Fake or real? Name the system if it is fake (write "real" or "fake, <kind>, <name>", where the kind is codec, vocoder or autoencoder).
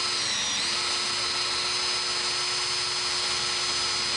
real